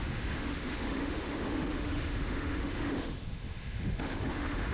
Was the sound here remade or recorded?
remade